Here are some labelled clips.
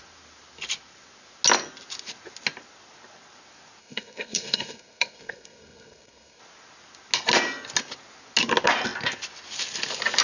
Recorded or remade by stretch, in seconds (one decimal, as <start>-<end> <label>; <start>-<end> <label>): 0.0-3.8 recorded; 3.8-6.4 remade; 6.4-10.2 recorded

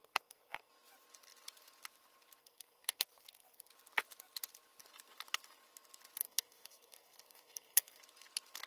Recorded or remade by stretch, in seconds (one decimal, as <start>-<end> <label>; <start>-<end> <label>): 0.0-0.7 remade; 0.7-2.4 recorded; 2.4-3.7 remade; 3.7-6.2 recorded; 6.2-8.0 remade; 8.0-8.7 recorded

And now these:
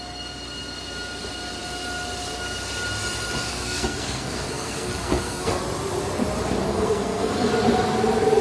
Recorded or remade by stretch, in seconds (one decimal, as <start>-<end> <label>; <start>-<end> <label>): 0.0-3.5 recorded; 3.5-5.6 remade; 5.6-6.7 recorded; 6.7-7.5 remade; 7.5-8.4 recorded

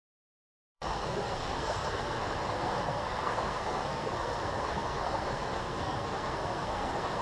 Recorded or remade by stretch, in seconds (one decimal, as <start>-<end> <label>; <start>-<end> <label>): 0.0-7.2 remade

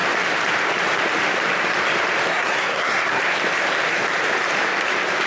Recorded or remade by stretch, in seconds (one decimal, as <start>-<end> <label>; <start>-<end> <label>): 0.0-2.3 recorded; 2.3-3.2 remade; 3.2-5.3 recorded

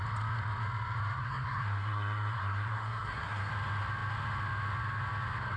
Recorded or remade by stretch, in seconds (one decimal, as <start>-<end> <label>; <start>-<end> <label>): 0.0-1.2 recorded; 1.2-3.5 remade; 3.5-5.6 recorded